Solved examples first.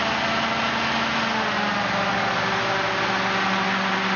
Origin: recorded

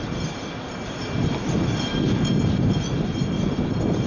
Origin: recorded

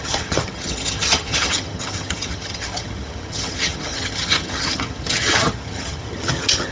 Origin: remade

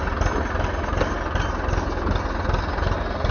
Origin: recorded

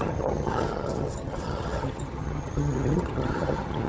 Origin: remade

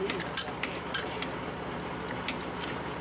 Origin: recorded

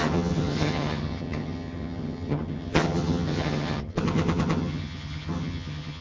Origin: remade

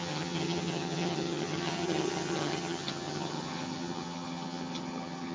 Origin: remade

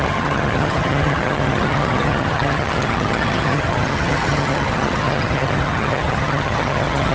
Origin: remade